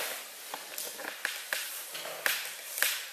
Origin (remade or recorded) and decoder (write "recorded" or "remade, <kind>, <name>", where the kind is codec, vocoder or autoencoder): recorded